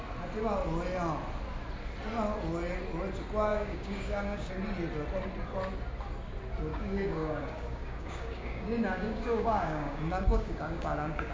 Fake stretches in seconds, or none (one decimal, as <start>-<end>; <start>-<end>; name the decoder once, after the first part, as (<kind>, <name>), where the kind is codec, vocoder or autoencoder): 3.5-4.5 (codec, DAC); 6.7-11.3